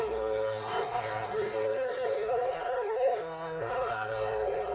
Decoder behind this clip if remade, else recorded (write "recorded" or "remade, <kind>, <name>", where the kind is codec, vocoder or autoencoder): remade, codec, SNAC